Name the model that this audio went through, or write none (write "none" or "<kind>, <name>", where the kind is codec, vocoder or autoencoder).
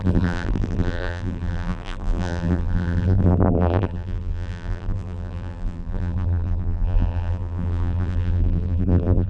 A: vocoder, BigVGAN v2